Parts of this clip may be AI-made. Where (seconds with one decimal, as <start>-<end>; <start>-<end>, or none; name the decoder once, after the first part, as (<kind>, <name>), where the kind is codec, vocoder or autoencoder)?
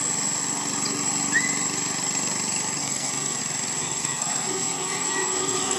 2.8-3.4 (codec, SNAC); 3.8-5.8